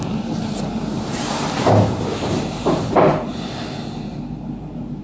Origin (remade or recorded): remade